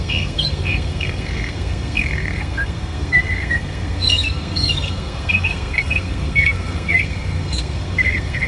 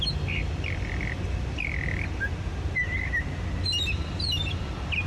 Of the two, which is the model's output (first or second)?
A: first